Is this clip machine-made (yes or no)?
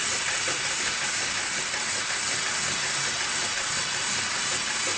no